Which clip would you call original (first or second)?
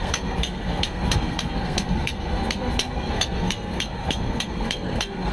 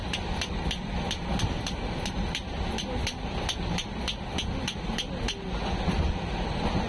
second